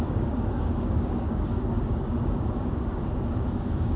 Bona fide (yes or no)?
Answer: no